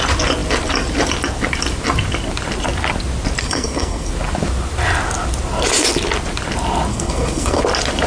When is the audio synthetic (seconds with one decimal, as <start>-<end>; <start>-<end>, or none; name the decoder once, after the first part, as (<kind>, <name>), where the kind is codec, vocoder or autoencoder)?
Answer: 3.4-4.1 (codec, SNAC); 6.9-7.6